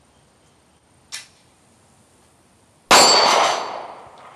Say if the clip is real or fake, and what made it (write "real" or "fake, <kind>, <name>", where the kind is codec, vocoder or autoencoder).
real